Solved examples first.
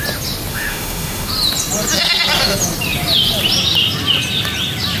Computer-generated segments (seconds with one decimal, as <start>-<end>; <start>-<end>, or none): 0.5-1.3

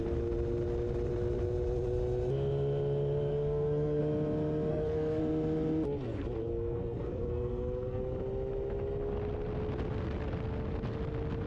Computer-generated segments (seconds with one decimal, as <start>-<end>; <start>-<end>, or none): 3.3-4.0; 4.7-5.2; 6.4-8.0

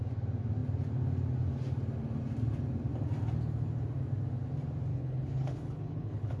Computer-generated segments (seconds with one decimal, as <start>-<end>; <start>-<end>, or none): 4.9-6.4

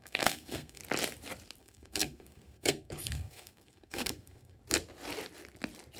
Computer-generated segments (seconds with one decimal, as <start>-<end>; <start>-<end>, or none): 0.0-0.8; 1.6-4.6

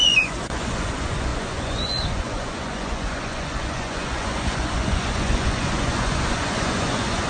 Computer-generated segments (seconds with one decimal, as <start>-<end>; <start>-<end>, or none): 0.0-7.3